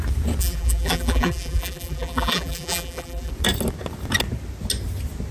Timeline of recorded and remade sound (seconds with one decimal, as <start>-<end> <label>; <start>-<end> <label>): 0.0-0.4 recorded; 0.4-3.3 remade; 3.3-5.3 recorded